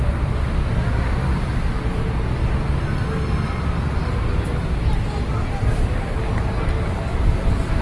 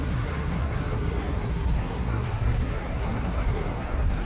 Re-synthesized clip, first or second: second